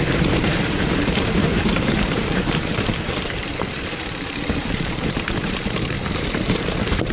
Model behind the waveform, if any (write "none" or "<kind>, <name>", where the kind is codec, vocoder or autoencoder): vocoder, BigVGAN v2